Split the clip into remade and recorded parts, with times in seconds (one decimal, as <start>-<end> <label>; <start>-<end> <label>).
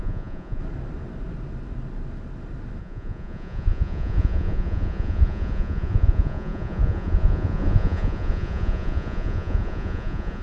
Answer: 0.0-0.6 remade; 0.6-2.8 recorded; 2.8-10.4 remade